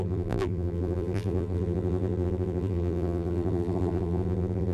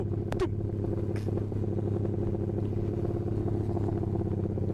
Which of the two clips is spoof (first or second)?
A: first